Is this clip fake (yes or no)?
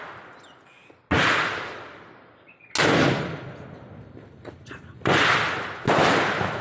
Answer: no